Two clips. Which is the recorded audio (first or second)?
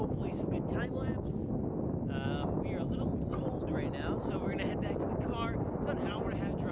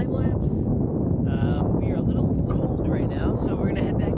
first